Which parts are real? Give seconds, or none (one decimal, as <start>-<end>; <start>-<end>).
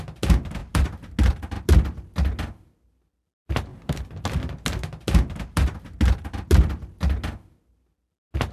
0.0-8.5